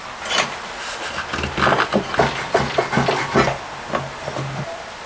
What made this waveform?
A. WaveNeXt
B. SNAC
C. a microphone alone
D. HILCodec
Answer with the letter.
C